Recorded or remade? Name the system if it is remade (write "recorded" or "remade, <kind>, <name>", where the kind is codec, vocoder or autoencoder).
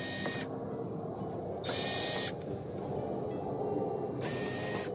recorded